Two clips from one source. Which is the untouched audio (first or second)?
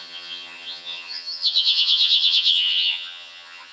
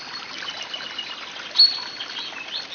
second